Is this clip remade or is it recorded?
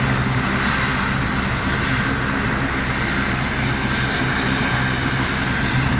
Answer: recorded